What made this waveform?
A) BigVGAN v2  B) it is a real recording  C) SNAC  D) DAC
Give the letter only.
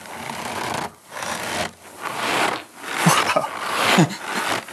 B